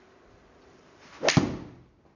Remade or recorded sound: recorded